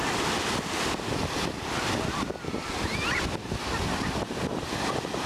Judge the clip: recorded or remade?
recorded